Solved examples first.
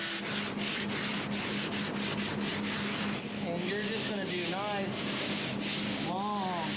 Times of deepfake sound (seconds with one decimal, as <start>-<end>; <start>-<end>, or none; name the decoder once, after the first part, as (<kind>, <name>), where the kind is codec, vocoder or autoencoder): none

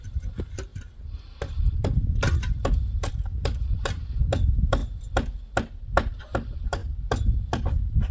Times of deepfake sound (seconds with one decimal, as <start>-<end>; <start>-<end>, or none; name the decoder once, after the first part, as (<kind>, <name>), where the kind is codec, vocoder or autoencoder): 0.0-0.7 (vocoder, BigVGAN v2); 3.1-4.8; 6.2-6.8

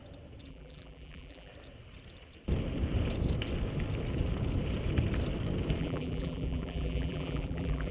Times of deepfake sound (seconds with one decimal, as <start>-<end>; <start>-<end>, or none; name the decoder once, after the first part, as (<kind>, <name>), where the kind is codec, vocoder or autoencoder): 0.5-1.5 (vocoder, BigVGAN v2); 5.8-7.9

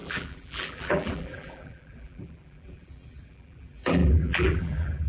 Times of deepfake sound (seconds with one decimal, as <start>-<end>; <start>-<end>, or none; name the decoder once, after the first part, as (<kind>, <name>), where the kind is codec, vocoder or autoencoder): 0.0-5.1 (vocoder, BigVGAN v2)

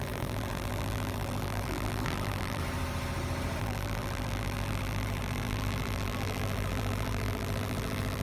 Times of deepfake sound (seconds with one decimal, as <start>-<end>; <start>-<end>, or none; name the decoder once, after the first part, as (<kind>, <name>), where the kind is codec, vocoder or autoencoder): 0.0-2.6 (vocoder, BigVGAN v2); 3.6-8.2